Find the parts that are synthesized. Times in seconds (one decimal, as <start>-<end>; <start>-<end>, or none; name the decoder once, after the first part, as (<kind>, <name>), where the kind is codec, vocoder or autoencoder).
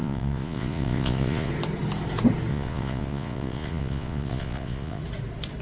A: 0.0-1.5 (vocoder, Vocos); 2.5-5.0